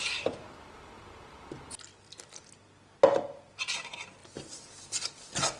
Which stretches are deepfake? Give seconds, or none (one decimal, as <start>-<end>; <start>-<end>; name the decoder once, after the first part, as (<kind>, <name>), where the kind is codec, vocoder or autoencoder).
none